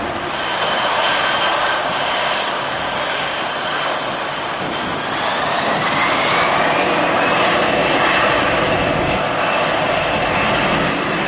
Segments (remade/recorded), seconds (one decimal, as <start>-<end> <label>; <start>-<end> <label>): 0.0-1.5 recorded; 1.5-3.4 remade; 3.4-11.3 recorded